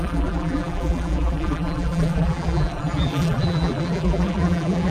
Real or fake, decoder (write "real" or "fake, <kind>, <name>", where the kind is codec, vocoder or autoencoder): fake, vocoder, BigVGAN v2